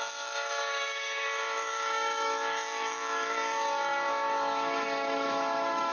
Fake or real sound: fake